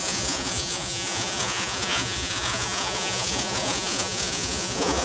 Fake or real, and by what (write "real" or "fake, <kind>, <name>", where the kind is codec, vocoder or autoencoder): fake, vocoder, Vocos